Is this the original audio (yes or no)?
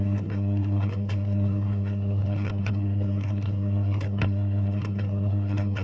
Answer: no